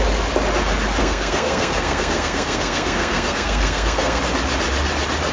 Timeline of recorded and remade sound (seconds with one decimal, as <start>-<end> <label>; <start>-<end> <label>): 0.0-1.0 recorded; 1.0-4.2 remade; 4.2-5.3 recorded

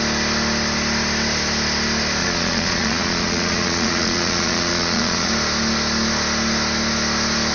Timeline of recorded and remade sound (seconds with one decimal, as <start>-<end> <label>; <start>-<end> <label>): 0.0-2.2 recorded; 2.2-5.3 remade; 5.3-7.5 recorded

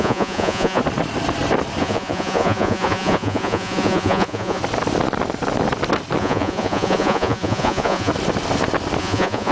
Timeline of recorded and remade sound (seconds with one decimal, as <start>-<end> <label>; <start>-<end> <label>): 0.0-0.8 remade; 0.8-1.8 recorded; 1.8-4.6 remade; 4.6-6.2 recorded; 6.2-8.1 remade; 8.1-9.0 recorded; 9.0-9.5 remade

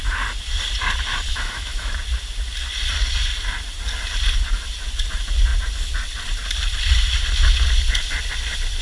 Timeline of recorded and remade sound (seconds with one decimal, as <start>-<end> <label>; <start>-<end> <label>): 0.0-1.3 recorded; 1.3-1.9 remade; 1.9-8.8 recorded

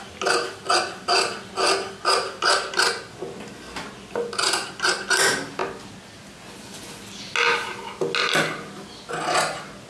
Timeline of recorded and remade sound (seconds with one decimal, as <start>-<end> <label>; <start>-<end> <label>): 0.0-9.9 recorded